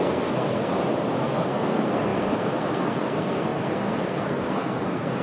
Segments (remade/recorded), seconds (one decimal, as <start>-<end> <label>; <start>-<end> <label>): 0.0-0.7 remade; 0.7-1.2 recorded; 1.2-5.2 remade